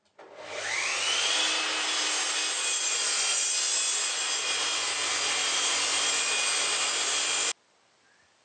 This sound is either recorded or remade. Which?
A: recorded